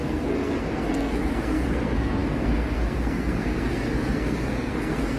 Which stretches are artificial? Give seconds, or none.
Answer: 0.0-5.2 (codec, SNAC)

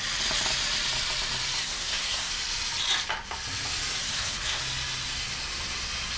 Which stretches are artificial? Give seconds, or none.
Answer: 1.6-2.3 (codec, SNAC); 4.0-4.6